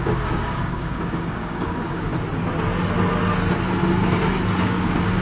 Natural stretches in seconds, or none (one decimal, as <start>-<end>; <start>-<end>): 2.1-4.6